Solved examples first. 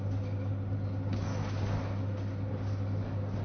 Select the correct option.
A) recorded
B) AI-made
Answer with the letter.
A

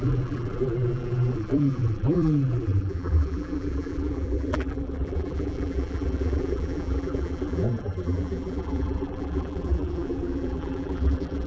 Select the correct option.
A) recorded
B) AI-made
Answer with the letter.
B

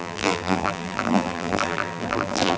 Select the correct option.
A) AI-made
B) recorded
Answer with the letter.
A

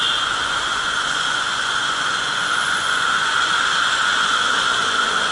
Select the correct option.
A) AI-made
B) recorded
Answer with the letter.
A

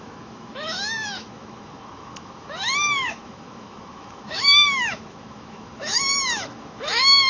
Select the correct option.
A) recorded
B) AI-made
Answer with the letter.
B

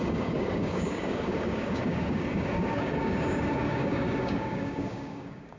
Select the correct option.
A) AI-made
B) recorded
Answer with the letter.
A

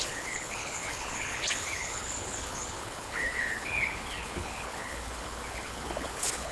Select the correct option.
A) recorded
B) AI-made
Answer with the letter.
B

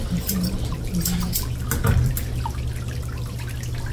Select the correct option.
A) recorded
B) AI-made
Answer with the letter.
A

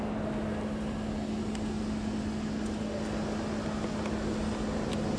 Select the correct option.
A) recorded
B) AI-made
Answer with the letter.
A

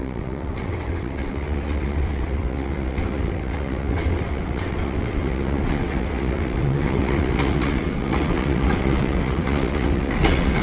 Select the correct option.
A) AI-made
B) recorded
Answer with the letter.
A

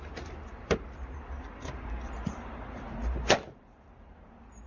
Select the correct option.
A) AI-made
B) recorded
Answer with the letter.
A